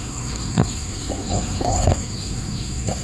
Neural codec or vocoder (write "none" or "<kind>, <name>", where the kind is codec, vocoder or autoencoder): codec, SNAC